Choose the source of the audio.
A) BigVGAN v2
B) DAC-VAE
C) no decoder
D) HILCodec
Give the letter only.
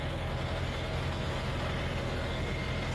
C